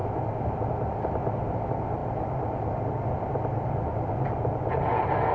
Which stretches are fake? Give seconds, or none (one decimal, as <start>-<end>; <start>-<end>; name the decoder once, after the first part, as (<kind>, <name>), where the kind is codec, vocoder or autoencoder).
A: none